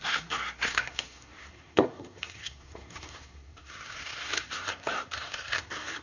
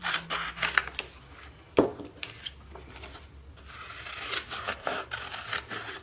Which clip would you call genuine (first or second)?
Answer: second